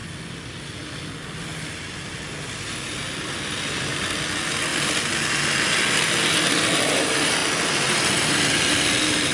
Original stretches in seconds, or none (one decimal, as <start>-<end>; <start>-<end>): 0.0-9.3